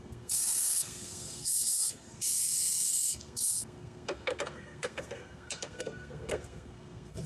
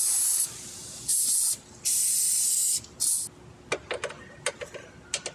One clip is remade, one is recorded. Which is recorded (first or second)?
second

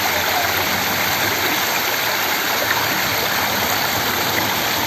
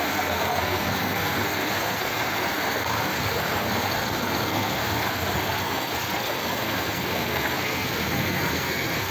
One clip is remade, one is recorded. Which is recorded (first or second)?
first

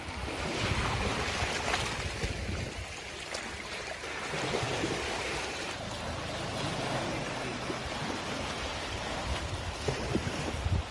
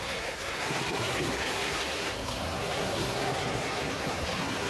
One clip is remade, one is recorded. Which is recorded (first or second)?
first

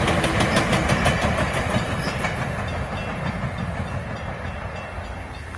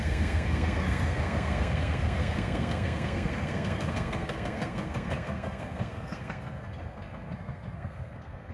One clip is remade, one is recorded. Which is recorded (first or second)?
first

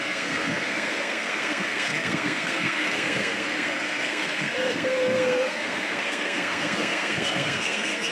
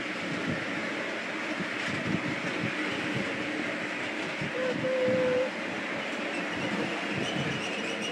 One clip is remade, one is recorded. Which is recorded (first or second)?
second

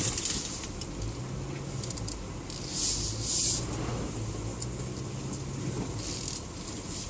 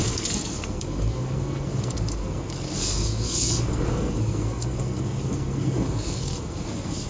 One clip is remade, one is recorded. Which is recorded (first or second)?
first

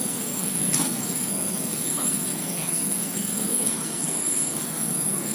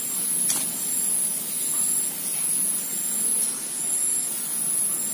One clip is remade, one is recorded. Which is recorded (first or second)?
second